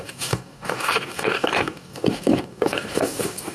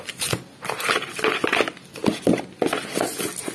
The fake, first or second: first